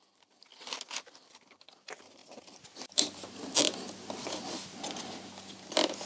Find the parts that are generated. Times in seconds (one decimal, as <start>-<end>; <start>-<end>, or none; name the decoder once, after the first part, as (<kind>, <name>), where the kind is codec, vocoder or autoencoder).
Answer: 0.0-0.5 (vocoder, BigVGAN v2); 1.0-2.2; 5.5-6.1